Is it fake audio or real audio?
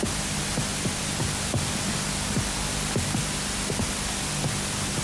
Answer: real